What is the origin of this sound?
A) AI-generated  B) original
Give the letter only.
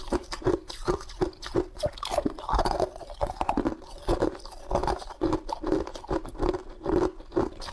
B